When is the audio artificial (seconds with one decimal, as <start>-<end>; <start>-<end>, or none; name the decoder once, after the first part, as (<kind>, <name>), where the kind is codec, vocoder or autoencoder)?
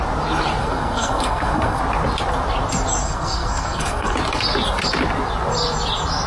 0.6-1.8 (codec, SNAC); 3.0-4.1